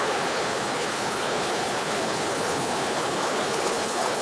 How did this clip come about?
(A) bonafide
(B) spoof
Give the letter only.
B